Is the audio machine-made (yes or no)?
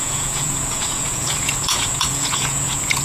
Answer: yes